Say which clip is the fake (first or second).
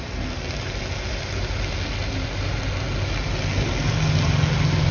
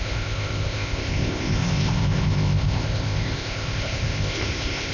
second